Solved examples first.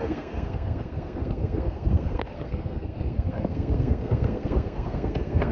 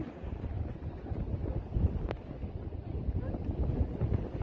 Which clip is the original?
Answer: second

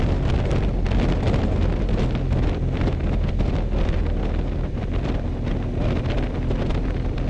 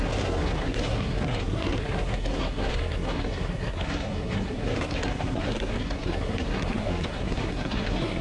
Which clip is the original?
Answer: first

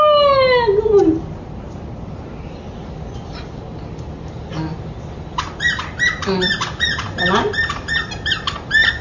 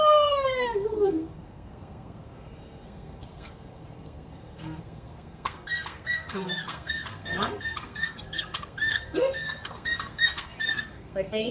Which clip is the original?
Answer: first